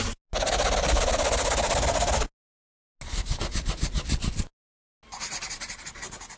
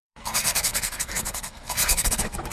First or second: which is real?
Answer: first